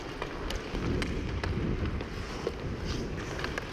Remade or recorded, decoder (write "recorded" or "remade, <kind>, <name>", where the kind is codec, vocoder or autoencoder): recorded